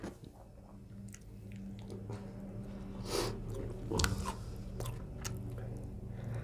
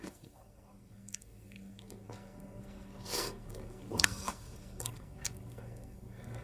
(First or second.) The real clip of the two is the first